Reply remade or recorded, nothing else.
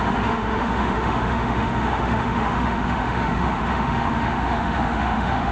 remade